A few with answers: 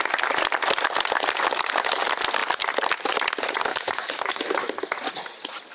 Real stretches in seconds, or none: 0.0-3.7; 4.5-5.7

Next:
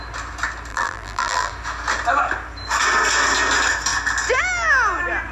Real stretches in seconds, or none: 0.0-0.7; 1.5-5.3